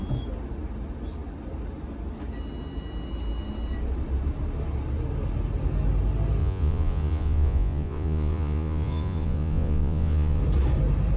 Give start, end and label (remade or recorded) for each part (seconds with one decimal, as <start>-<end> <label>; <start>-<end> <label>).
0.0-6.4 recorded; 6.4-10.4 remade; 10.4-11.2 recorded